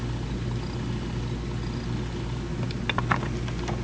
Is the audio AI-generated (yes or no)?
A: no